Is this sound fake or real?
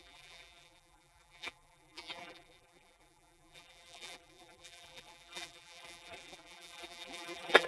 fake